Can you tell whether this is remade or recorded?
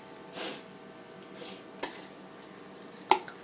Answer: recorded